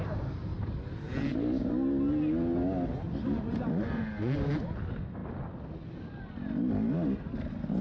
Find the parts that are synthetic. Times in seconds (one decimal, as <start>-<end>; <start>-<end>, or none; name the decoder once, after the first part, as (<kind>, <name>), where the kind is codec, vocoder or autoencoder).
0.5-1.1 (vocoder, BigVGAN v2)